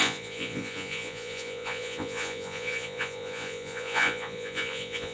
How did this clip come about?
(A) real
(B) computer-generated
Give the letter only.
B